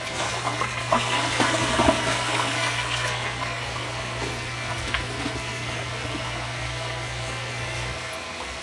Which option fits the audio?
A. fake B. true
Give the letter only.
A